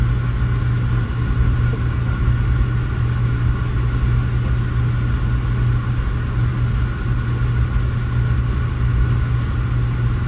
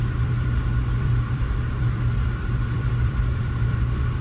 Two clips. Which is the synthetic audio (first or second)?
second